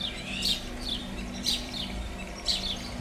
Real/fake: fake